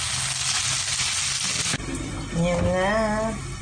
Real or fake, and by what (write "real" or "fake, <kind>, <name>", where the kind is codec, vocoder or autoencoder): real